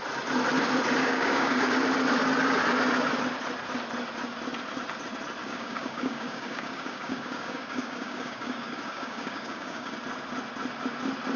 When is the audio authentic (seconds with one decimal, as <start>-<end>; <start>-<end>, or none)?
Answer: 0.0-1.0; 1.7-5.4; 9.9-11.4